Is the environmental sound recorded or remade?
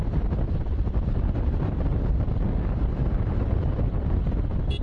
recorded